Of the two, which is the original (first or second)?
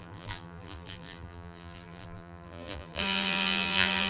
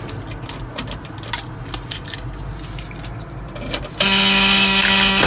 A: second